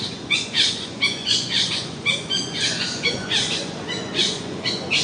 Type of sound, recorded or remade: remade